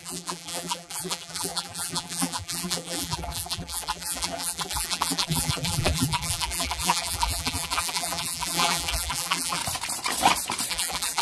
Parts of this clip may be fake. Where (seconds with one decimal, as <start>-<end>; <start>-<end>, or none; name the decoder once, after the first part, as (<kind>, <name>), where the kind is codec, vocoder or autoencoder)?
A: 0.0-9.6 (vocoder, BigVGAN v2); 10.7-11.2